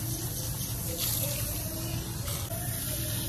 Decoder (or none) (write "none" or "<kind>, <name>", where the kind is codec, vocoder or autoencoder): none